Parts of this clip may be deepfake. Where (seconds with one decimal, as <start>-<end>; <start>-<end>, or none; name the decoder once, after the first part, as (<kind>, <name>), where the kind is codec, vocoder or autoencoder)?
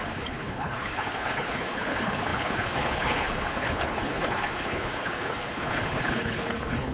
0.0-6.9 (codec, HILCodec)